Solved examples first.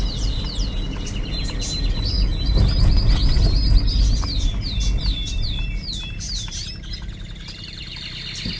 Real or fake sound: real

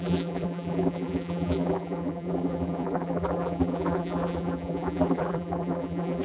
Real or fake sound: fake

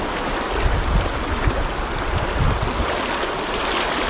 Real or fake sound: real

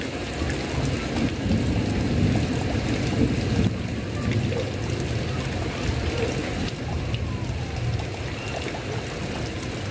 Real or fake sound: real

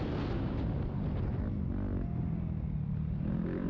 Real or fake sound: real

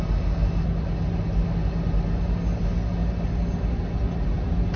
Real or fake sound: real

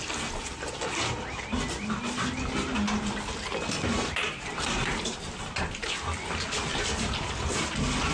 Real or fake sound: real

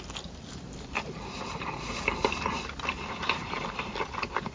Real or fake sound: fake